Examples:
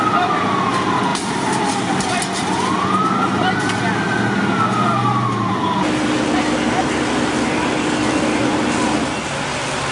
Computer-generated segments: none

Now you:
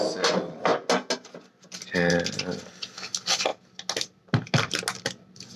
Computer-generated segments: none

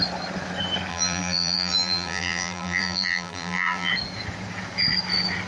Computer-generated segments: 0.9-3.9 (vocoder, BigVGAN v2)